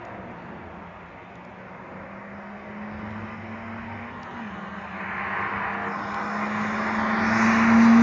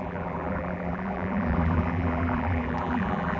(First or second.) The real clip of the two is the first